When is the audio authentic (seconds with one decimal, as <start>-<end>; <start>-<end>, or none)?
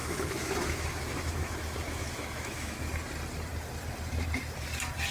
2.9-5.1